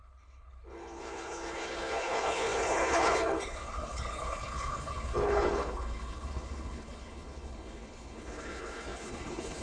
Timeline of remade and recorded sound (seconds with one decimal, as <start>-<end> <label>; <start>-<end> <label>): 0.0-9.6 remade